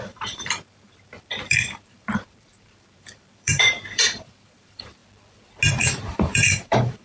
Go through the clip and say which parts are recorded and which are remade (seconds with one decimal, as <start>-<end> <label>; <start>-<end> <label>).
0.0-5.0 remade; 5.0-5.8 recorded; 5.8-7.0 remade